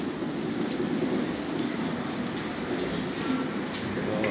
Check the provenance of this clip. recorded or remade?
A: recorded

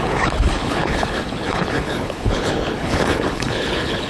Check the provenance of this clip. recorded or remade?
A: remade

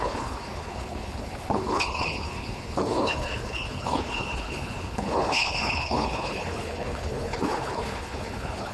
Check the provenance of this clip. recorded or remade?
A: remade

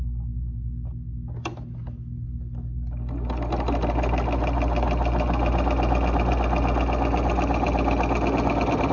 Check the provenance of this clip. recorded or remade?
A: recorded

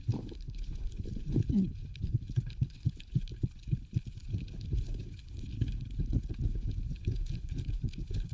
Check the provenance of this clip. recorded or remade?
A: remade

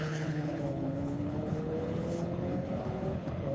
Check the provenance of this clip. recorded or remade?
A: remade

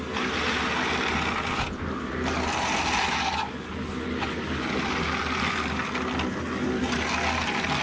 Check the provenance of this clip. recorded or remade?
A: recorded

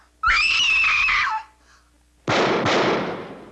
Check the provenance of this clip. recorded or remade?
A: recorded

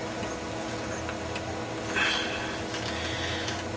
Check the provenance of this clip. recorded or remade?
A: recorded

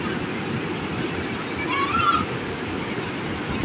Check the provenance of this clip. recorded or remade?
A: recorded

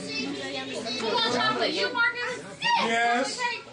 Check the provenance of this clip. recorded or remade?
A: recorded